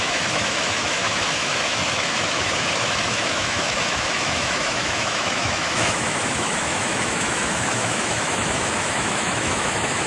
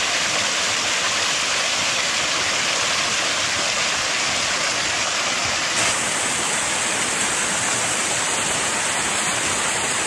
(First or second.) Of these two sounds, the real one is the second